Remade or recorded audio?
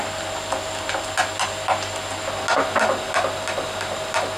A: recorded